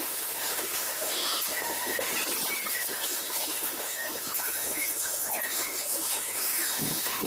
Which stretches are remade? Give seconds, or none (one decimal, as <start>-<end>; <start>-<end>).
0.0-2.1; 2.7-7.3